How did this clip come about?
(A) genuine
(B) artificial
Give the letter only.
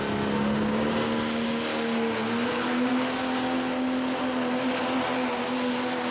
A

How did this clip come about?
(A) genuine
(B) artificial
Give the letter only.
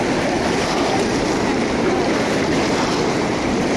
A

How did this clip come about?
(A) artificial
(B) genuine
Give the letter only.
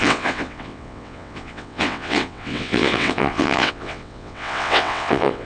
A